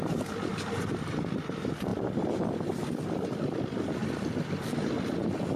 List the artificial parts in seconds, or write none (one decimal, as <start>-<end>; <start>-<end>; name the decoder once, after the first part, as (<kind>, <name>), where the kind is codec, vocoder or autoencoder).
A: 0.0-1.9 (vocoder, BigVGAN v2); 3.4-5.6